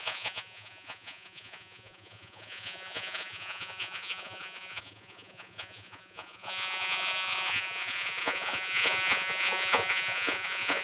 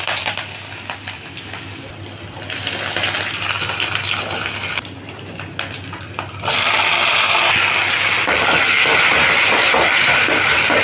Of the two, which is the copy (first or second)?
first